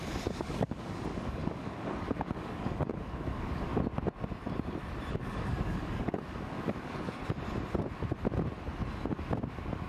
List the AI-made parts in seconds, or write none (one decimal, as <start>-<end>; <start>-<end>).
0.0-3.7; 5.1-7.2; 9.5-9.9